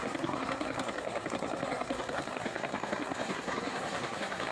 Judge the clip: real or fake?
fake